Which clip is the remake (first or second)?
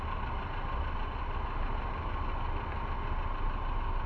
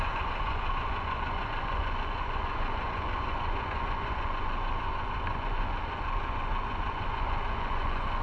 second